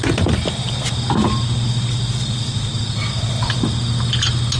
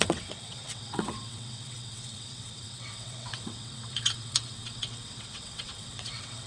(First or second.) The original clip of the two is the first